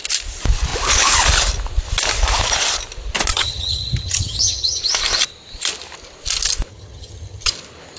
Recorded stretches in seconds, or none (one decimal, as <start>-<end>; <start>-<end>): 0.0-3.3; 4.8-6.7; 7.5-8.0